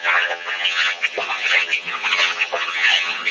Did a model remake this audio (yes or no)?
yes